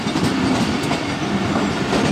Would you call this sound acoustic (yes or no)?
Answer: yes